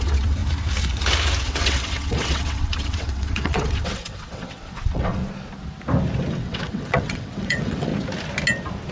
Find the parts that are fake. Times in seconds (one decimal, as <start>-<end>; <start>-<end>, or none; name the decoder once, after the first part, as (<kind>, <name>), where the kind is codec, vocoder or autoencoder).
0.0-0.4 (vocoder, WaveNeXt); 1.4-5.2; 6.3-7.9